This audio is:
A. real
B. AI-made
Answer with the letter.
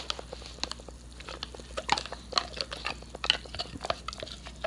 A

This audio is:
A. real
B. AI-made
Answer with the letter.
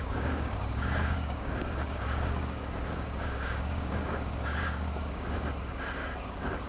B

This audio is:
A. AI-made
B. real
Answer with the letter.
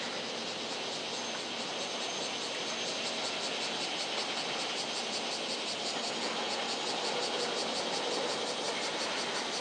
B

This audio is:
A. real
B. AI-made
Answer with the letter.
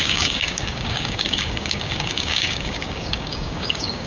B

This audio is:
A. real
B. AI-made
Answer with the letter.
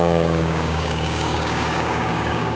B